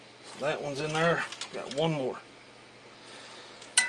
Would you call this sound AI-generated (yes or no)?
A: no